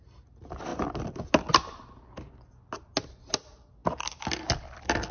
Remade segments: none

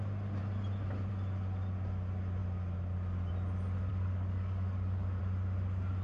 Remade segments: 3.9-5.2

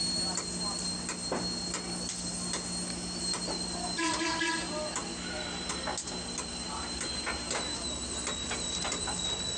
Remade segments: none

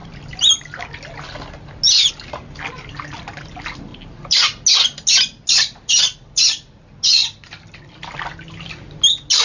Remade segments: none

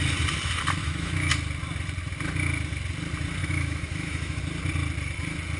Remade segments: 0.8-1.3; 3.4-4.4